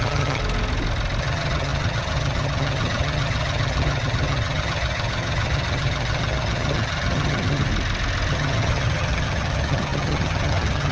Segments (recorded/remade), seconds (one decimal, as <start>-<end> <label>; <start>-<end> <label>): 0.0-0.4 remade; 0.4-1.2 recorded; 1.2-7.7 remade; 7.7-8.3 recorded; 8.3-10.9 remade